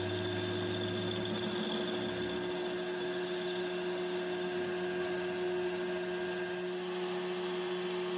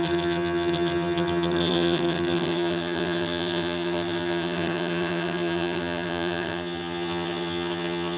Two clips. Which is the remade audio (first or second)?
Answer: second